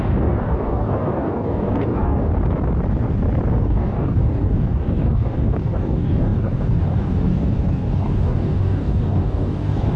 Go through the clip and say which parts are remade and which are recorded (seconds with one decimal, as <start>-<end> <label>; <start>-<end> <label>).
0.0-2.3 remade; 2.3-3.5 recorded; 3.5-10.0 remade